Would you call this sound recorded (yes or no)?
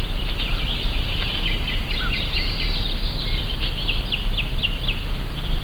yes